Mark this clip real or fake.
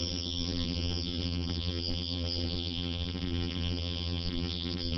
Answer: fake